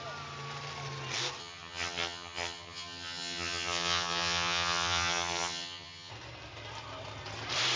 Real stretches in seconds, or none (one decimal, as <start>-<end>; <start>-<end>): 0.0-1.4; 6.1-7.8